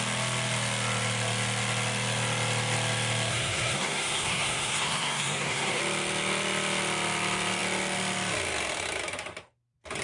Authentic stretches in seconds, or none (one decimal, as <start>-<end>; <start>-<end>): 0.0-3.3; 5.8-10.0